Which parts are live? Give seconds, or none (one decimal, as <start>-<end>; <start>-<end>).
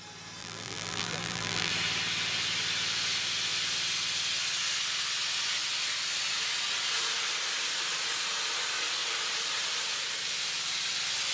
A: 0.0-0.4; 1.7-11.3